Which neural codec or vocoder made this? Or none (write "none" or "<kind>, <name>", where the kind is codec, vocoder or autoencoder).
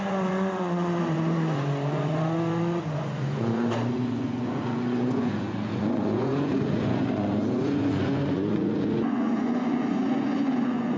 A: vocoder, Vocos